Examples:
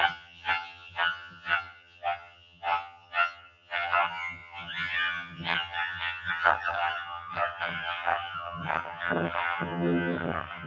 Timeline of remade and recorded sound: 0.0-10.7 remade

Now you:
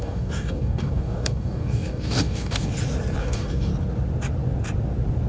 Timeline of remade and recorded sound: 0.0-2.7 remade; 2.7-3.2 recorded; 3.2-3.7 remade; 3.7-5.3 recorded